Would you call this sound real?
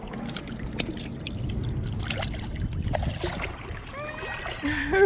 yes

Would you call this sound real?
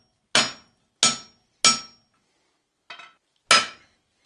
yes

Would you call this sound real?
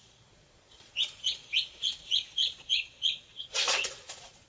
no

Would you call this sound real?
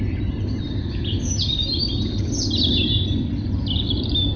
yes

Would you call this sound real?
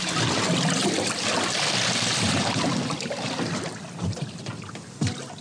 yes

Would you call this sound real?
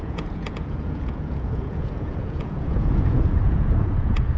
no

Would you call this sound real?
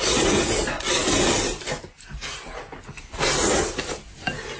yes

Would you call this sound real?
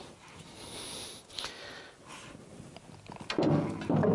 yes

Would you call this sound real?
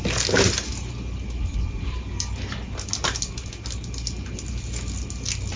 yes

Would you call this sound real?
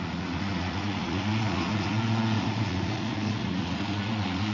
no